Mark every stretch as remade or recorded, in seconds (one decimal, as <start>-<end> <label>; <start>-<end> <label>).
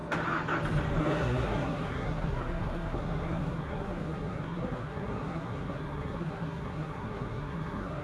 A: 0.0-1.0 recorded; 1.0-8.0 remade